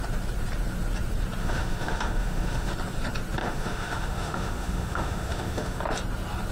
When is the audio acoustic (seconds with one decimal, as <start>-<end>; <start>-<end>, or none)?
0.0-1.4; 2.7-3.4; 5.8-6.5

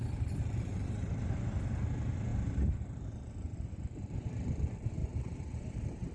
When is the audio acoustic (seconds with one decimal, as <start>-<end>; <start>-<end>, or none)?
0.0-5.0

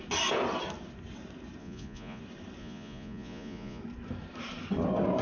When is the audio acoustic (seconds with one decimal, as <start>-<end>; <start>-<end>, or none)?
0.0-1.6; 2.2-2.6; 3.8-5.2

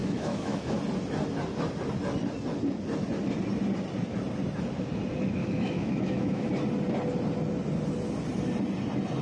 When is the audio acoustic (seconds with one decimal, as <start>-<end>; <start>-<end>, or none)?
0.8-5.4; 6.5-9.2